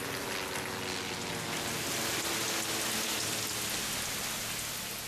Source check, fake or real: real